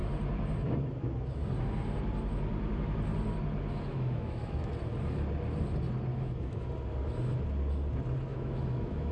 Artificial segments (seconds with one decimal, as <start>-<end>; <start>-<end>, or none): 3.9-4.7; 6.1-6.7; 8.3-9.1